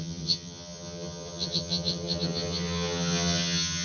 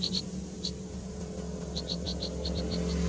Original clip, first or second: second